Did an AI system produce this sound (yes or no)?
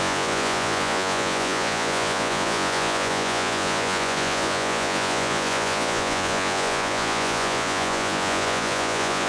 yes